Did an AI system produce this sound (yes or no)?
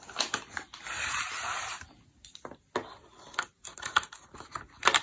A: no